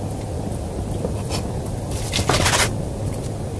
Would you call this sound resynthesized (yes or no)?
no